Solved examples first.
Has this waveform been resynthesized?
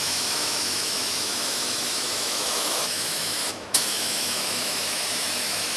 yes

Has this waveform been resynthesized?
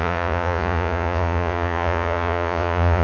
yes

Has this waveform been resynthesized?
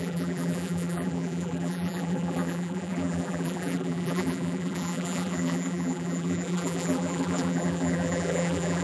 yes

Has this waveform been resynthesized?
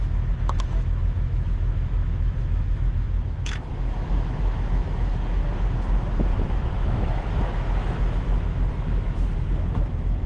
yes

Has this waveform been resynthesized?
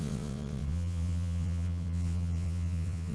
yes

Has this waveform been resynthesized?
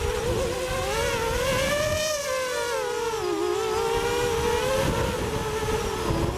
no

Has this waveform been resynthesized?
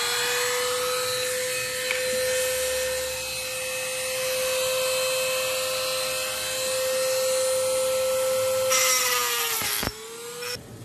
no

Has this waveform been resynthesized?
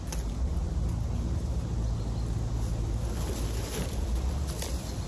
no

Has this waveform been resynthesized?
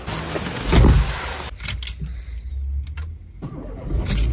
no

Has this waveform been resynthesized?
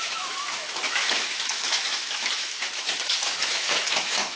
yes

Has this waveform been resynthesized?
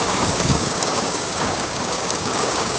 yes